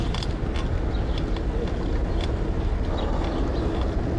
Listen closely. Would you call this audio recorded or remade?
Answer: recorded